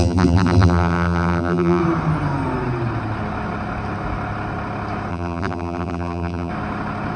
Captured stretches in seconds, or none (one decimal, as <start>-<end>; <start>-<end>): 1.8-5.1; 6.5-7.2